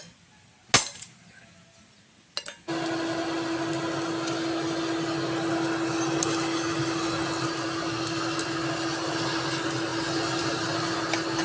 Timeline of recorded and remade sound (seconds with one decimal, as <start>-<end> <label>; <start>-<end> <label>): 0.0-11.4 recorded

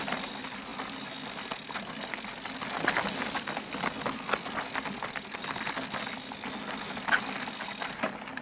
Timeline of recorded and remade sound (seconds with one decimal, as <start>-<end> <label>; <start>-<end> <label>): 0.0-8.4 recorded

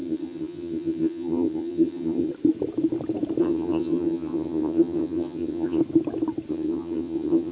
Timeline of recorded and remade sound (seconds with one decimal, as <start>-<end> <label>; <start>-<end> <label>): 0.0-2.3 remade; 2.3-3.4 recorded; 3.4-5.8 remade; 5.8-6.5 recorded; 6.5-7.5 remade

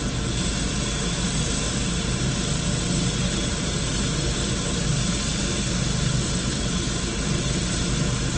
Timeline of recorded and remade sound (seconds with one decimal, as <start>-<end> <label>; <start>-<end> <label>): 0.0-8.4 recorded

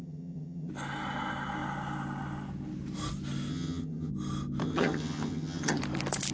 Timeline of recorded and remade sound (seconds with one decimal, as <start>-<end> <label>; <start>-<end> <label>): 0.0-0.7 remade; 0.7-3.5 recorded; 3.5-4.1 remade; 4.1-4.6 recorded; 4.6-5.8 remade; 5.8-6.3 recorded

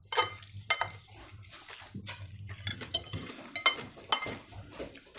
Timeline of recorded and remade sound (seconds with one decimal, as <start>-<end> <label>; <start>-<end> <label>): 0.0-2.7 recorded; 2.7-3.3 remade; 3.3-5.2 recorded

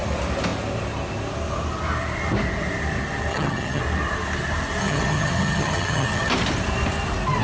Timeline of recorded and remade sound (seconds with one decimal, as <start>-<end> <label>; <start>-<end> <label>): 0.0-3.3 recorded; 3.3-3.8 remade; 3.8-4.8 recorded; 4.8-6.3 remade; 6.3-7.4 recorded

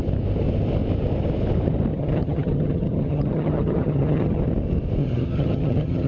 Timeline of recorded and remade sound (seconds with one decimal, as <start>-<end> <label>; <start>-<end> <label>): 0.0-1.9 recorded; 1.9-4.4 remade; 4.4-5.0 recorded; 5.0-6.1 remade